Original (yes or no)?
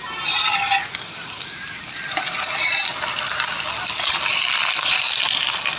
yes